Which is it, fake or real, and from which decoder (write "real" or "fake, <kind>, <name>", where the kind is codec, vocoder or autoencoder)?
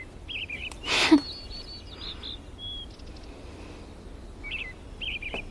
real